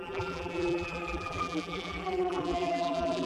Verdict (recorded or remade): remade